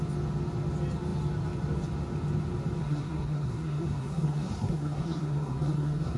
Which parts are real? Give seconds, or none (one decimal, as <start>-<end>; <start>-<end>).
0.0-2.8

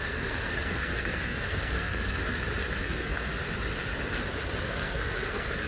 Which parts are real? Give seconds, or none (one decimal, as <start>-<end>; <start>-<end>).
2.2-2.8; 3.3-4.6

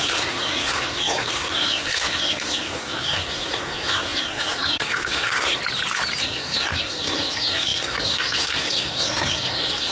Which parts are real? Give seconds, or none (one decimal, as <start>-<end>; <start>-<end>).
5.6-6.2